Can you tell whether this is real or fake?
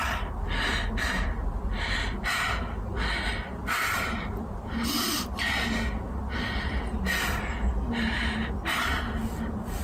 real